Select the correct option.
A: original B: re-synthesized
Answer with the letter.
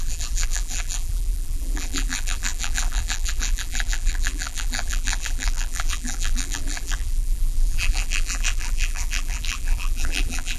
B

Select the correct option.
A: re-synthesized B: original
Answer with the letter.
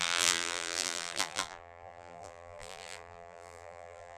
A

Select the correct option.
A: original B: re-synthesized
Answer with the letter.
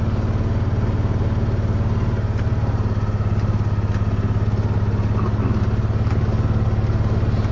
A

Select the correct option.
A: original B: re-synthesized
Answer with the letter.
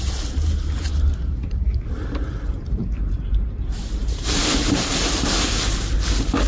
B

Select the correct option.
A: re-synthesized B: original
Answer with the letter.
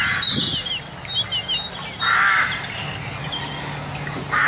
B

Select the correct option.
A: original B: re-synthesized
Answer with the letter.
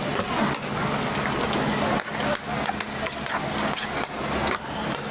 A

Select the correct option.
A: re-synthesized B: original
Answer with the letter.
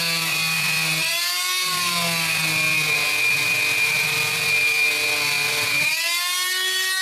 B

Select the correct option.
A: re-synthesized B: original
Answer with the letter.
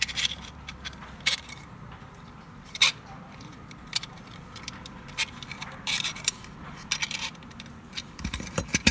A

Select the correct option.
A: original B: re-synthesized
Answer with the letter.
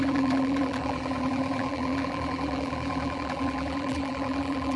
B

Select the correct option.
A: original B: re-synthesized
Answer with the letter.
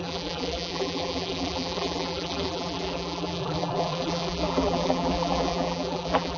B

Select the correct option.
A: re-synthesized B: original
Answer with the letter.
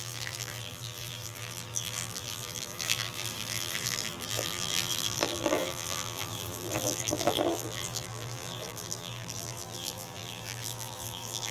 A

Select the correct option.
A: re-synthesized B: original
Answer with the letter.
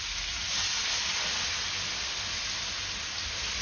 B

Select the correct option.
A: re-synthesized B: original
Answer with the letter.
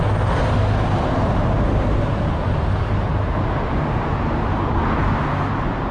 B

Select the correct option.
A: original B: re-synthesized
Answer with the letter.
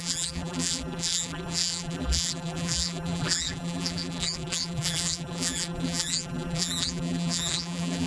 B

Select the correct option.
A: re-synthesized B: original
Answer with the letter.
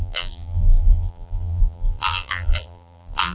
A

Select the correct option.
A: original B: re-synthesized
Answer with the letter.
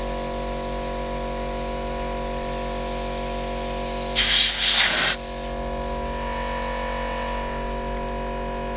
A